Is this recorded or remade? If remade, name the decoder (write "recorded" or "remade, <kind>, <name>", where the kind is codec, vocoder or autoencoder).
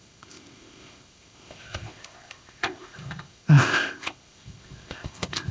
remade, codec, ZipCodec